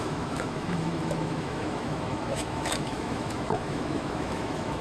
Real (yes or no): no